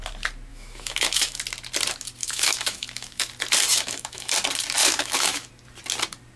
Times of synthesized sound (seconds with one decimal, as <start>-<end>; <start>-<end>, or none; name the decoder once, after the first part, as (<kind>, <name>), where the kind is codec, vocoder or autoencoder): 0.5-1.4 (autoencoder, DAC-VAE); 2.2-3.3; 3.7-4.3; 4.8-5.5